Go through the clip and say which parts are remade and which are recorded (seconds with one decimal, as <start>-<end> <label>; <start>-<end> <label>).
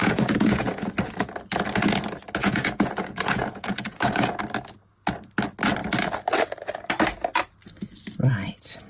0.0-0.9 remade; 0.9-2.4 recorded; 2.4-4.4 remade; 4.4-8.9 recorded